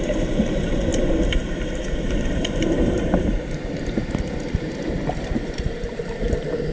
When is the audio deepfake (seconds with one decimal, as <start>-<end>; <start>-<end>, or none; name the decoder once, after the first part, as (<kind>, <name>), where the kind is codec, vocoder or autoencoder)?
0.0-6.7 (vocoder, BigVGAN v2)